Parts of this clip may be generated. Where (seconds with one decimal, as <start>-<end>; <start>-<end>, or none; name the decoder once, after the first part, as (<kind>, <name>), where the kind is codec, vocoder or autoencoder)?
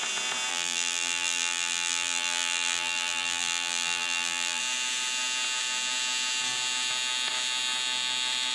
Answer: 0.5-4.6 (vocoder, BigVGAN v2)